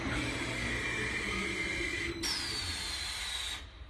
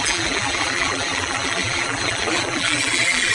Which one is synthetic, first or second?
second